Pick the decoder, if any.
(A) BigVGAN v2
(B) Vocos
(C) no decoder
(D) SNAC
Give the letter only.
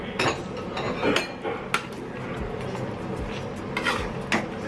C